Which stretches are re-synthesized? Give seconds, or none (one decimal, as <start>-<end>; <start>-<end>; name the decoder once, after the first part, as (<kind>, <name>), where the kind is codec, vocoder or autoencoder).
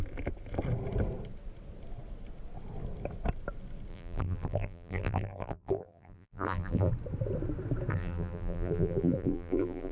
3.9-6.9 (vocoder, BigVGAN v2); 7.9-9.9